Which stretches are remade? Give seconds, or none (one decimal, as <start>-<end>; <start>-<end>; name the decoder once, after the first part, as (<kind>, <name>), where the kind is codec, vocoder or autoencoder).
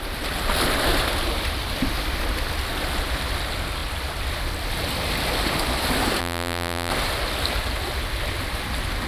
6.2-6.9 (vocoder, BigVGAN v2)